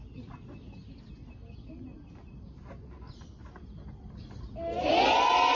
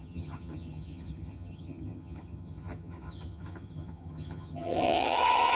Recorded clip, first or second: first